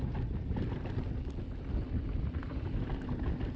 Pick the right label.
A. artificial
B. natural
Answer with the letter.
B